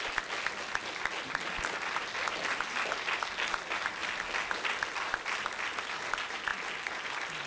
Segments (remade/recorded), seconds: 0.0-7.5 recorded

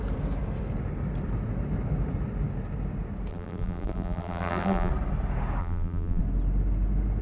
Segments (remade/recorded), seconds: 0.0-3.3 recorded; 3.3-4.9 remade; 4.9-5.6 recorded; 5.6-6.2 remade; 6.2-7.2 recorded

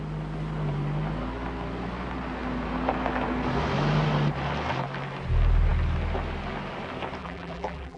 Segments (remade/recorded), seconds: 0.0-7.2 recorded; 7.2-8.0 remade

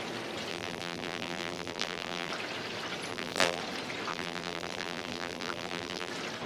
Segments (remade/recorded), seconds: 0.0-0.5 recorded; 0.5-2.3 remade; 2.3-3.1 recorded; 3.1-3.6 remade; 3.6-4.1 recorded; 4.1-6.1 remade; 6.1-6.5 recorded